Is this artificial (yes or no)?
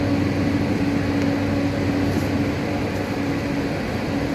no